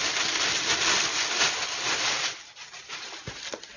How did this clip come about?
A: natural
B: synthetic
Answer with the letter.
B